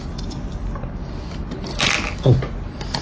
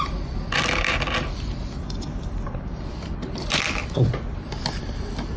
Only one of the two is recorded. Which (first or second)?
first